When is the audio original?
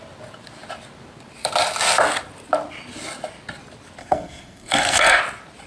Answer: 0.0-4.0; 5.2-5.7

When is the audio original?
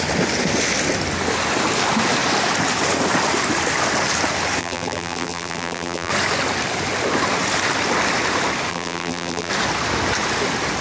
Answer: 0.0-4.6; 6.1-8.7; 9.5-10.8